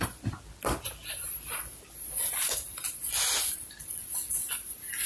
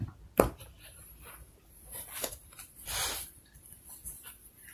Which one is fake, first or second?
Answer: second